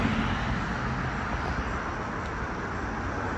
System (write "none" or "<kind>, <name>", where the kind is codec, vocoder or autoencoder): none